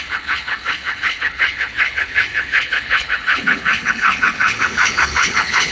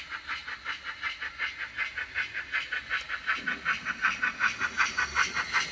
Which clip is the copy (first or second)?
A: first